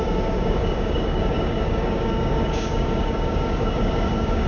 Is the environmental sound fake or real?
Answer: fake